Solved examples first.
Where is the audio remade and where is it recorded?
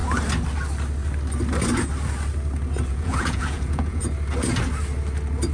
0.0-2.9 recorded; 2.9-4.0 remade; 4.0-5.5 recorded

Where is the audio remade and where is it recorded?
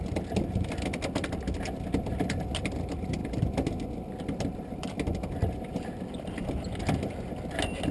0.0-7.9 recorded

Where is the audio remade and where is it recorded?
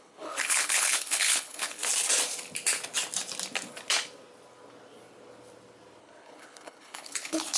0.0-1.8 remade; 1.8-6.0 recorded; 6.0-7.6 remade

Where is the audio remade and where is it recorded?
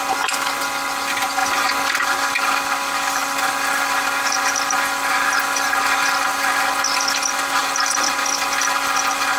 0.0-9.4 recorded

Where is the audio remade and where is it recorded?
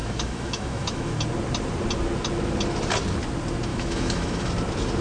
0.0-1.1 remade; 1.1-3.7 recorded; 3.7-4.5 remade; 4.5-5.0 recorded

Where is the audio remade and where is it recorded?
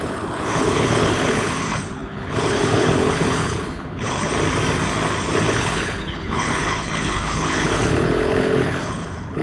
0.0-4.3 remade; 4.3-5.5 recorded; 5.5-9.4 remade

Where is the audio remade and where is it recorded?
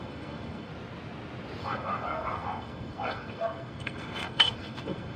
0.0-0.7 remade; 0.7-1.6 recorded; 1.6-5.2 remade